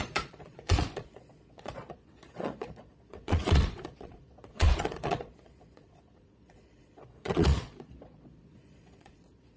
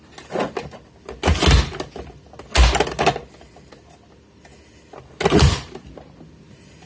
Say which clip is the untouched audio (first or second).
second